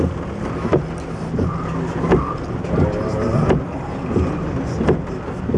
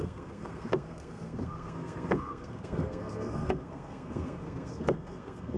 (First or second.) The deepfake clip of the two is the second